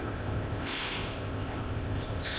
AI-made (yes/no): yes